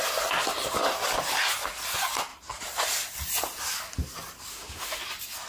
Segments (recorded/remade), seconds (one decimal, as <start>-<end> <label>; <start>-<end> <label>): 0.0-4.5 recorded; 4.5-5.0 remade; 5.0-5.5 recorded